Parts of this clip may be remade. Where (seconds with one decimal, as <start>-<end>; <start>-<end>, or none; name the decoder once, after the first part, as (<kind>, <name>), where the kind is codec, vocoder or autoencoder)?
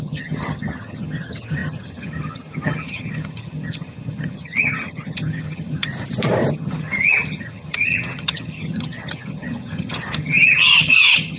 0.0-5.9 (vocoder, HiFi-GAN); 6.5-11.4